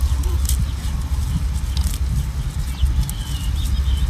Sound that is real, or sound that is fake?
real